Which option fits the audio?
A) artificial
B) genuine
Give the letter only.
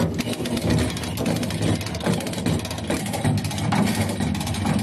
B